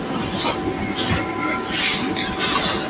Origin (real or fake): real